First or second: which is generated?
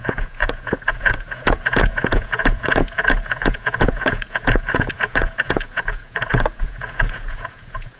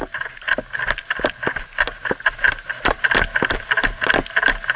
first